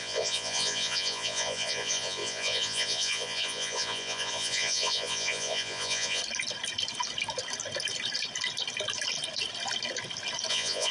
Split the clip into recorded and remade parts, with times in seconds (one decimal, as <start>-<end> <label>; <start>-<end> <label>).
0.0-6.2 remade; 6.2-10.5 recorded; 10.5-10.9 remade

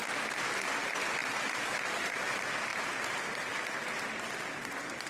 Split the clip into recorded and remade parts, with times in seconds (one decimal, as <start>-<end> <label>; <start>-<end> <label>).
0.0-5.1 recorded

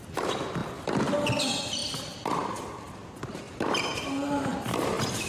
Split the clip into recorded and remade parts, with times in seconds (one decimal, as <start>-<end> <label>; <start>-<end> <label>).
0.0-5.3 recorded

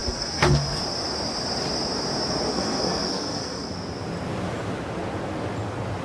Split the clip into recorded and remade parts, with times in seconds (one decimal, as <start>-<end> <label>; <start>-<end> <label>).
0.0-0.8 remade; 0.8-2.5 recorded; 2.5-3.7 remade; 3.7-6.0 recorded